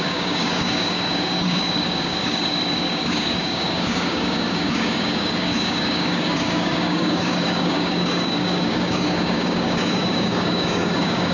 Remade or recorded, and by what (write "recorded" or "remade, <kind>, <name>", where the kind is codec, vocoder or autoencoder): remade, codec, DAC